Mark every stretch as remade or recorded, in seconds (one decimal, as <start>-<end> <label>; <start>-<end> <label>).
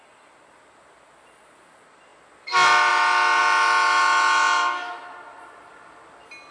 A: 0.0-6.5 recorded